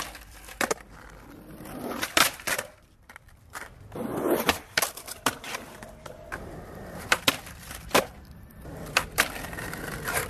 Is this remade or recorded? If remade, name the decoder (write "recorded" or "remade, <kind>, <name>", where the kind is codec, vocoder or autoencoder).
remade, vocoder, BigVGAN v2